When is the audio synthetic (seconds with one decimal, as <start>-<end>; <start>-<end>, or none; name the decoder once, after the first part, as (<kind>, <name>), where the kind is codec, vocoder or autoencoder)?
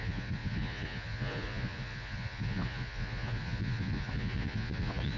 0.0-5.2 (vocoder, Vocos)